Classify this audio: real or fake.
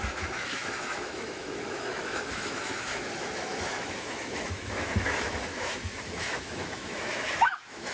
fake